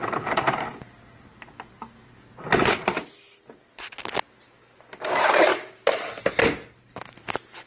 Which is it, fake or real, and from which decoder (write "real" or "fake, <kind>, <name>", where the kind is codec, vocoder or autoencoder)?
real